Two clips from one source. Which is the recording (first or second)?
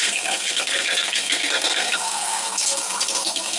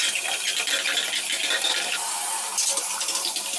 second